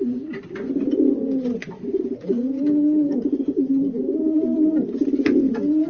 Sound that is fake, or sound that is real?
real